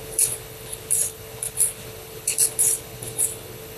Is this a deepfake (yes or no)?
yes